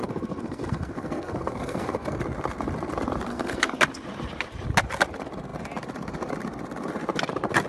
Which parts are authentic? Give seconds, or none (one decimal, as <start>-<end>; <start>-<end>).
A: 2.2-3.3; 3.8-7.7

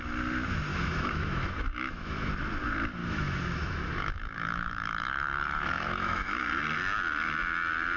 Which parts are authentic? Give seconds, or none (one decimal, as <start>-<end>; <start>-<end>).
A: 0.0-0.7; 2.3-3.0; 6.4-8.0

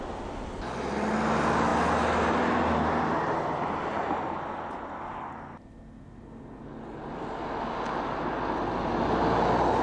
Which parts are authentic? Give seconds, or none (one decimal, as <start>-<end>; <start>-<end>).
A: 0.0-9.8